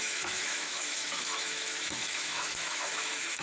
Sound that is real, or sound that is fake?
fake